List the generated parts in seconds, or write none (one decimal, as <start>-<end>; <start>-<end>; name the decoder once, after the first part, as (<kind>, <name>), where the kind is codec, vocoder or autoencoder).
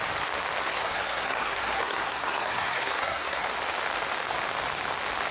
0.6-3.5 (codec, SNAC)